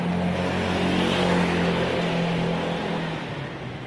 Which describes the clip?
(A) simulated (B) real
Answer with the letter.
B